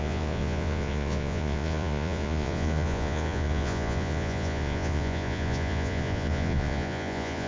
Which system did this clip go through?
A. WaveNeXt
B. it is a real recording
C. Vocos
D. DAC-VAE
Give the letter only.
C